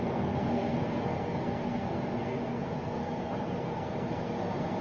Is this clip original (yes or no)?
no